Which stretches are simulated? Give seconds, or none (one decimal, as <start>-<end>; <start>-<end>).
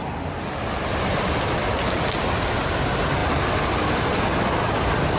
none